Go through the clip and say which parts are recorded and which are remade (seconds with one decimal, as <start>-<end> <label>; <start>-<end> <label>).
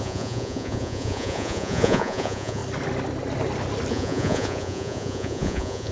0.0-2.6 remade; 2.6-3.9 recorded; 3.9-5.9 remade